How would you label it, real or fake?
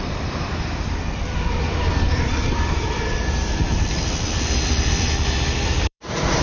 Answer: fake